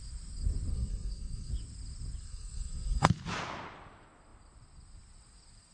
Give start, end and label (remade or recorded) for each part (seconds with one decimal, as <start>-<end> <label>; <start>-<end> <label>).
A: 0.0-0.7 recorded; 0.7-1.5 remade; 1.5-2.2 recorded; 2.2-3.1 remade; 3.1-5.7 recorded